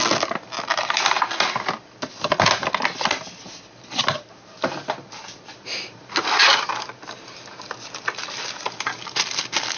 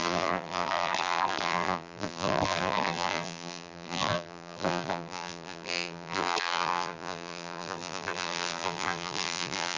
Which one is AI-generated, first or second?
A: second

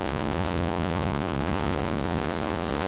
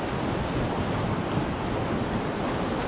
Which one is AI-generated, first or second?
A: first